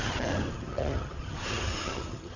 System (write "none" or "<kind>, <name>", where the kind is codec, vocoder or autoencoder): vocoder, HiFi-GAN